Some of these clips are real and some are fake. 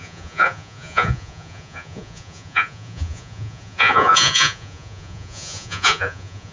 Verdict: fake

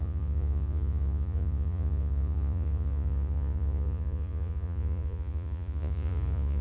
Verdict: fake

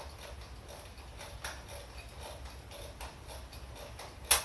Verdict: real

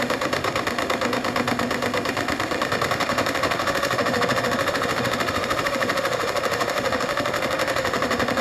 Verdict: fake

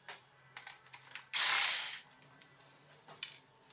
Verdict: real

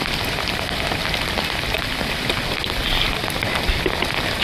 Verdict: real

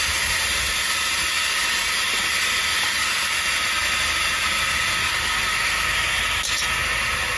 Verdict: real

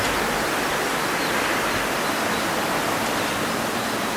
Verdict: real